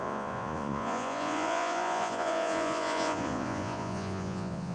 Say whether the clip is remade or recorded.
remade